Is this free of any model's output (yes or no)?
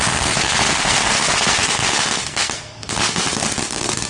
no